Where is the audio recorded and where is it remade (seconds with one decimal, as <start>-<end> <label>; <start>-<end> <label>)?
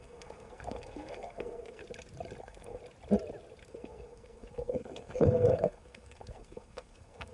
0.0-1.8 remade; 1.8-2.4 recorded; 2.4-2.8 remade; 2.8-3.7 recorded; 3.7-7.3 remade